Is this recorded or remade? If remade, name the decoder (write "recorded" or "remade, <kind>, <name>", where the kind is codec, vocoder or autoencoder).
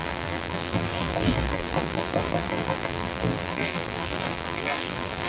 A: remade, vocoder, BigVGAN v2